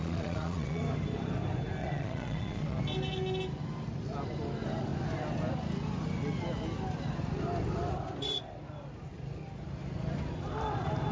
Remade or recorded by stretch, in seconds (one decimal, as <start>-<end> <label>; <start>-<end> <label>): 0.0-0.8 remade; 0.8-1.8 recorded; 1.8-2.8 remade; 2.8-11.1 recorded